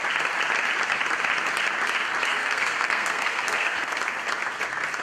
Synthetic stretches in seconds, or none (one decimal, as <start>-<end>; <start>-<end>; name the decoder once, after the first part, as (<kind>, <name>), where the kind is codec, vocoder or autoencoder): 2.3-4.0 (codec, SNAC)